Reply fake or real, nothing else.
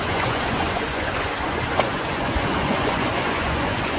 fake